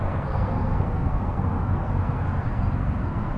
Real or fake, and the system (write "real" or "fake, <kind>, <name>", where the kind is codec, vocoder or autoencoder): fake, codec, SNAC